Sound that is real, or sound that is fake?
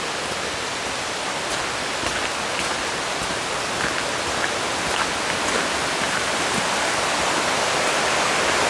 real